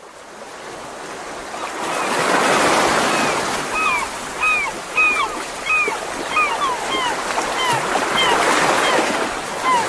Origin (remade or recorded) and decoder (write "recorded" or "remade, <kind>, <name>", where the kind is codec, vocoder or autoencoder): recorded